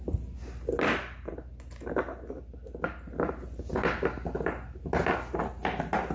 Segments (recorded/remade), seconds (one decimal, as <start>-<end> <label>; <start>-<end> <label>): 0.0-6.1 recorded